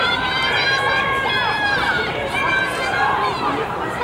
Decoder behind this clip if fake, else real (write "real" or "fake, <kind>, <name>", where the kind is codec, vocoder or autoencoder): fake, vocoder, BigVGAN v2